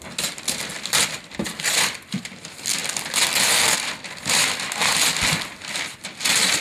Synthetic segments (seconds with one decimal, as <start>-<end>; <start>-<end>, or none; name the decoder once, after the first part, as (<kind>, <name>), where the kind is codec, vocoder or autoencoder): none